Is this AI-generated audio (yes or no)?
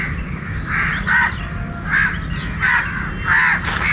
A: no